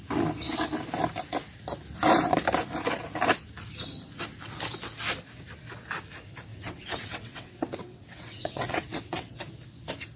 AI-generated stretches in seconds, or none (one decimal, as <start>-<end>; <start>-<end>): 6.5-9.4

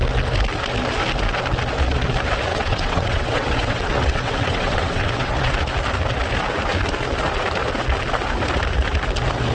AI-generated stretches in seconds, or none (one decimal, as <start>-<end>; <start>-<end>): 2.5-5.5

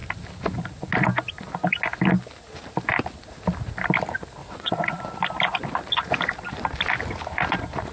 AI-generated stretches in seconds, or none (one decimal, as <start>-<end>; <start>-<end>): 4.4-5.0

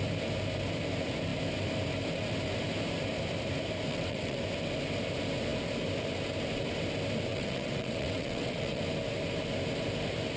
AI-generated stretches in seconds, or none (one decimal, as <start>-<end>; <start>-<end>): 3.9-4.4; 7.3-8.8

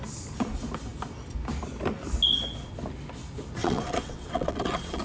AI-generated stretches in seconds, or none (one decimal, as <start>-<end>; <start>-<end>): 3.6-5.0

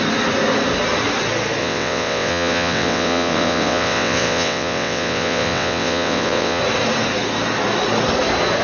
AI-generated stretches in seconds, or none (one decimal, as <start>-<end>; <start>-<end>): 1.6-6.6